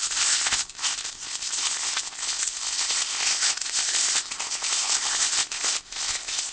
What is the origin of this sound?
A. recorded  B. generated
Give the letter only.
B